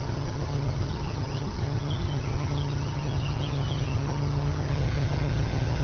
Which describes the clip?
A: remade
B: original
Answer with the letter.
A